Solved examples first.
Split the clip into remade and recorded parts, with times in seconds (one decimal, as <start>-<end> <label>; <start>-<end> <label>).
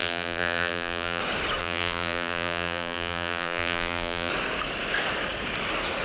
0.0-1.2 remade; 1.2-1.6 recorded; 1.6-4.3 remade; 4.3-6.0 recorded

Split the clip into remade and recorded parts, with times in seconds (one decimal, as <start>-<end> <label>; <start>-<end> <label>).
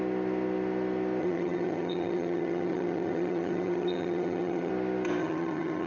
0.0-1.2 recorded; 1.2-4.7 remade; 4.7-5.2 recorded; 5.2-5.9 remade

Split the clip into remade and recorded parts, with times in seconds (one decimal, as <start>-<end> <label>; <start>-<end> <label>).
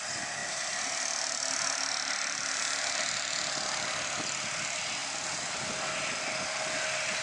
0.0-7.2 recorded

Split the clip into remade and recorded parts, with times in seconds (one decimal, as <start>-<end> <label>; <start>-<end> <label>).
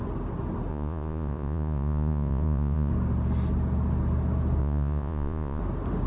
0.0-0.7 recorded; 0.7-2.9 remade; 2.9-4.6 recorded; 4.6-5.6 remade; 5.6-6.1 recorded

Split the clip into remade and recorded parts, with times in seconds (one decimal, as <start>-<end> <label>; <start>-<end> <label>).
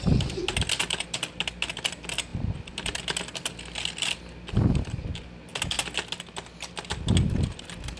0.0-8.0 recorded